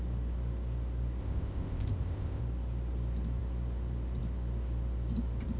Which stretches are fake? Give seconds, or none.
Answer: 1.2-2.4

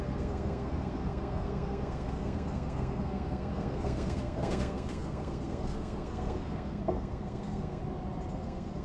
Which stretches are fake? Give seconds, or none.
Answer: 0.0-7.8; 8.3-8.8

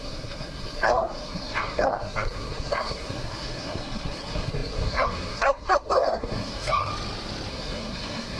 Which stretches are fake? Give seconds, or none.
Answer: 0.0-6.9; 7.5-8.4

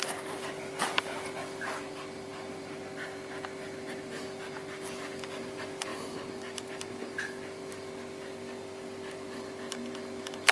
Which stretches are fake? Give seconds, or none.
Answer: none

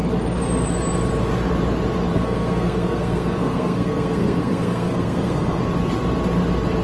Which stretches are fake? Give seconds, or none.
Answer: 2.1-5.6

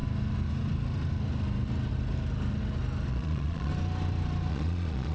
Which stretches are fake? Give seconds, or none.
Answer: 3.1-3.7; 4.5-5.1

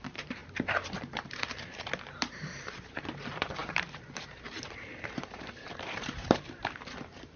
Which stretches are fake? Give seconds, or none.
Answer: 0.0-7.4